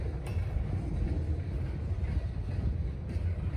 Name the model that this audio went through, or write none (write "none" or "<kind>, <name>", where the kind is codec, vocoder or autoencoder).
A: none